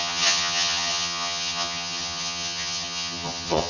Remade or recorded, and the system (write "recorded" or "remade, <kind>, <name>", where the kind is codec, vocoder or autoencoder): remade, vocoder, HiFi-GAN